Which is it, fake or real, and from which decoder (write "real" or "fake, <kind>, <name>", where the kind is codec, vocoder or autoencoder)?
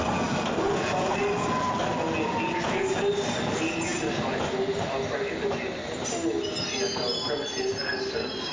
real